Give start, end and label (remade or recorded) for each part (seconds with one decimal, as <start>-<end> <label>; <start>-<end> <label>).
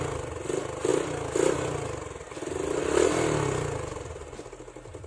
0.0-5.1 recorded